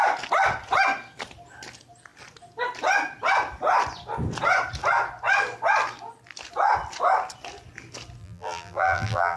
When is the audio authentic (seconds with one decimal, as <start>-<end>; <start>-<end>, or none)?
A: 0.0-8.2